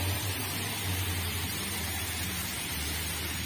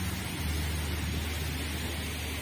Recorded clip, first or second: second